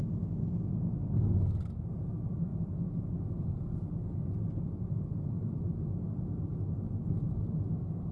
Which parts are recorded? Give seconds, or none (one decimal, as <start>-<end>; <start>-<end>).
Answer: 0.0-8.1

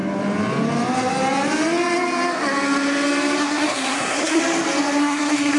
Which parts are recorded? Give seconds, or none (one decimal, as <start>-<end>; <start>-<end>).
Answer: 0.0-3.4; 4.4-5.0

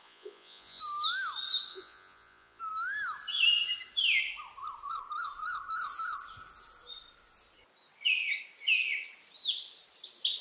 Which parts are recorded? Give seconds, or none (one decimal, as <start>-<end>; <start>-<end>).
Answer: 0.8-1.7; 2.6-10.4

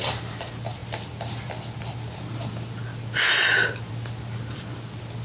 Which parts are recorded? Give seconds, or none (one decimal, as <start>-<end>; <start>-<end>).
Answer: 0.0-5.2

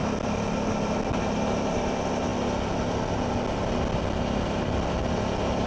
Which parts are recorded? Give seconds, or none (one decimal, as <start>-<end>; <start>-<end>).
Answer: 0.0-5.7

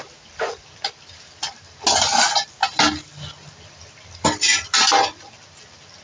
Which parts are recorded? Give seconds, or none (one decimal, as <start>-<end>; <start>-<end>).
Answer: 0.0-6.0

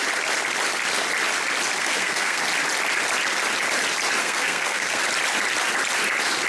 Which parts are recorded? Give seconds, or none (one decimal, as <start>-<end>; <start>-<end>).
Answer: 0.0-1.8; 2.4-4.2; 5.0-6.5